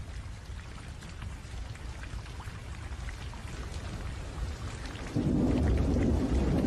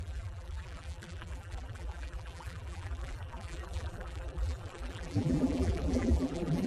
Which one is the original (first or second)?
first